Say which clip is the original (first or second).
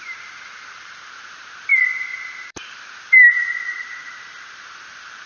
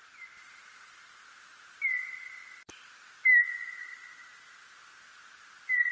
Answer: second